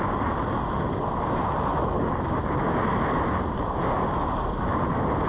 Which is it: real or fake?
real